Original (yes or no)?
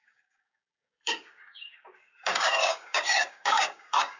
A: no